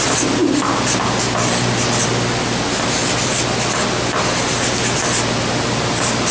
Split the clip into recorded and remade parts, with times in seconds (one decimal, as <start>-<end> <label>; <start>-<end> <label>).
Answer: 0.0-6.3 recorded